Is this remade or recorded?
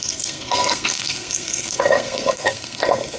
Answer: remade